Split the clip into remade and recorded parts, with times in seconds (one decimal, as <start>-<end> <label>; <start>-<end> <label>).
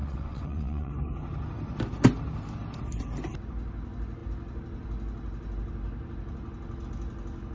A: 0.0-0.9 remade; 0.9-7.5 recorded